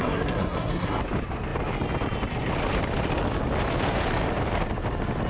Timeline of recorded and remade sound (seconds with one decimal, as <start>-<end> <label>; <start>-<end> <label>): 0.0-1.0 remade; 1.0-5.3 recorded